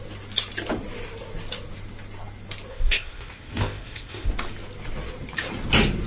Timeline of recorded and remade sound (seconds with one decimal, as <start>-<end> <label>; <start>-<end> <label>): 0.0-2.7 recorded; 2.7-4.3 remade; 4.3-6.1 recorded